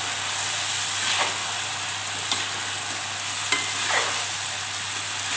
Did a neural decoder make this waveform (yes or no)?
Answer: no